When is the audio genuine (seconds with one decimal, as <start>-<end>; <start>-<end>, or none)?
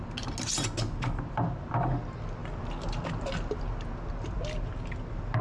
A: 0.0-2.4; 3.6-5.4